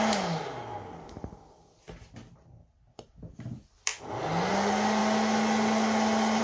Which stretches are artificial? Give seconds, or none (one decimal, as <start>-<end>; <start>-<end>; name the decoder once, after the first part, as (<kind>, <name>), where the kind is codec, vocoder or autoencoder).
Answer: none